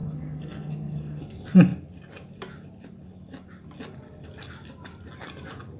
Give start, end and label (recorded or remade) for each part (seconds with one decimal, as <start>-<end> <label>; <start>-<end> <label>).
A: 0.0-1.2 remade; 1.2-5.8 recorded